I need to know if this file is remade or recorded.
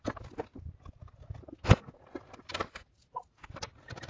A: recorded